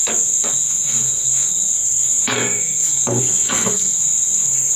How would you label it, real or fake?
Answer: fake